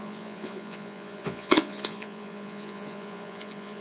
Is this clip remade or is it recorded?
remade